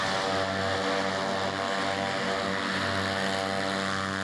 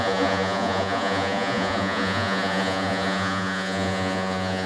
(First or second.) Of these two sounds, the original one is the first